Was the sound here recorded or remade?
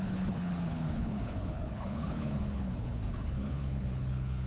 remade